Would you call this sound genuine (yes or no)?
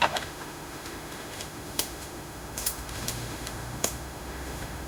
no